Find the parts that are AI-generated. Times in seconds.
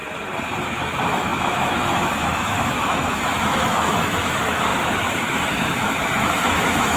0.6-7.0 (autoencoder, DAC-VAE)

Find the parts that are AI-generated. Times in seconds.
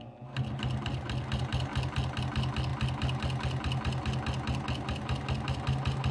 none